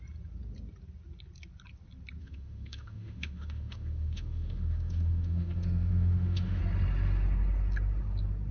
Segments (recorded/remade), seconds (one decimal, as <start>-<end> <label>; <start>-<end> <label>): 0.0-2.2 recorded; 2.2-6.6 remade; 6.6-8.5 recorded